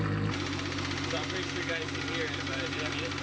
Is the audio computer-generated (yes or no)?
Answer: no